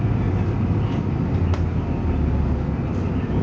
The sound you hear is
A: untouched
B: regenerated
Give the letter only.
A